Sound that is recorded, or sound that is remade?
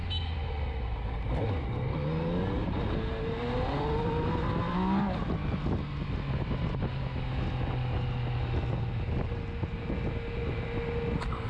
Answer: recorded